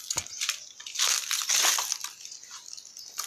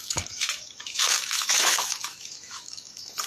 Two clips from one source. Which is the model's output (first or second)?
second